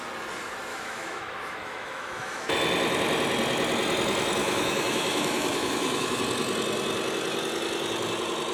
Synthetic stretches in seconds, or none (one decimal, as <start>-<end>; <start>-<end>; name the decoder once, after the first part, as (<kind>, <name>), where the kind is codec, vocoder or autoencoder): 0.7-2.5 (autoencoder, DAC-VAE); 4.4-6.2